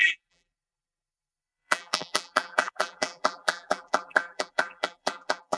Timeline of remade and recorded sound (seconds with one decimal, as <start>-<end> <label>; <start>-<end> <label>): 0.0-5.6 remade